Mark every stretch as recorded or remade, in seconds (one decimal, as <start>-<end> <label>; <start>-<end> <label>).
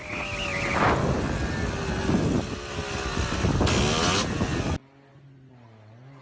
0.0-6.2 recorded